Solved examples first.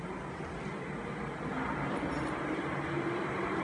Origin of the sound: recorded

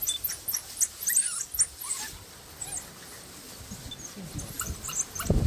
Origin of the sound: recorded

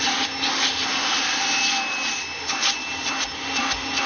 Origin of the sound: recorded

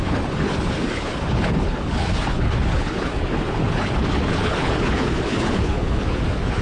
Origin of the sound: remade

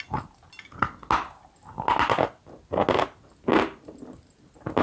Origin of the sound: recorded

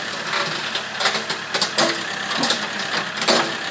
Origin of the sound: recorded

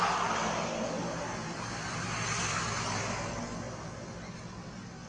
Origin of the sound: recorded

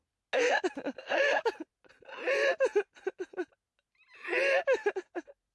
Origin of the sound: recorded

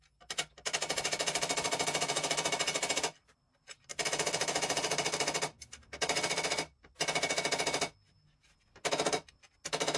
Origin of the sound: recorded